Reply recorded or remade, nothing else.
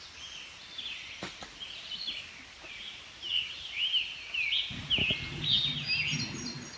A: recorded